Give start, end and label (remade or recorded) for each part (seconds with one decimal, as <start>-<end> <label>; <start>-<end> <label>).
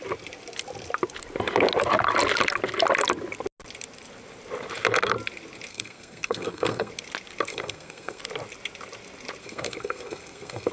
0.0-5.7 recorded; 5.7-6.9 remade; 6.9-7.5 recorded; 7.5-8.2 remade; 8.2-9.4 recorded; 9.4-10.7 remade